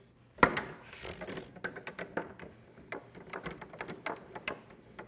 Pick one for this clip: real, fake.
real